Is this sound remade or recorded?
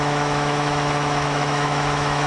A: remade